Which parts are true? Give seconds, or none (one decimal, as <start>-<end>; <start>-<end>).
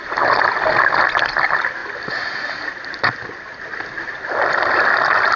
0.0-5.4